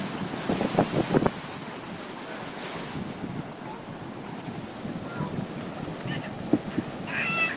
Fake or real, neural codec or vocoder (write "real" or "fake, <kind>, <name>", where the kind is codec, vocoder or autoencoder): real